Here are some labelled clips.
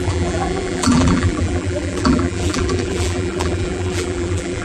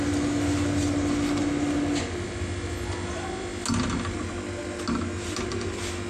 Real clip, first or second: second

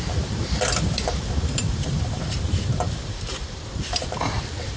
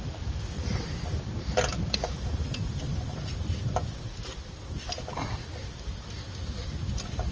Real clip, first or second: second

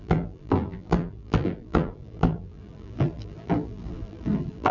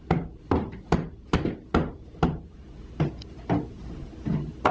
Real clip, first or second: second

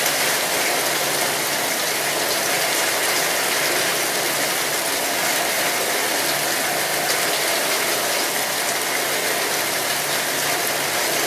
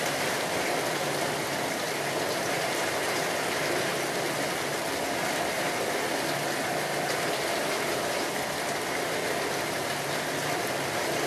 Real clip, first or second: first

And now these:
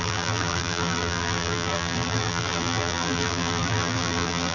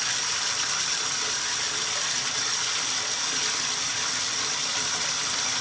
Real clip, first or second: second